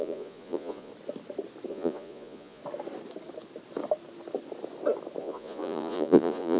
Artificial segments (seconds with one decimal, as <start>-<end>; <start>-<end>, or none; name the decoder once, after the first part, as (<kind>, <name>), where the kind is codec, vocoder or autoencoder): 0.0-0.9 (vocoder, Vocos); 1.7-2.6; 5.2-6.6